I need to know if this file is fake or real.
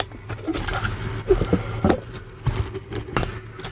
real